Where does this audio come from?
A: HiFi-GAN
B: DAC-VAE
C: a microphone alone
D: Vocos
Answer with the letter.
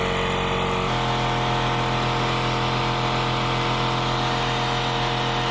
C